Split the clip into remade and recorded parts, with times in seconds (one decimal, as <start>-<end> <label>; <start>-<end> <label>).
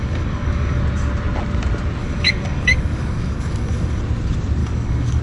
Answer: 0.0-0.8 remade; 0.8-2.0 recorded; 2.0-4.0 remade; 4.0-4.6 recorded; 4.6-5.2 remade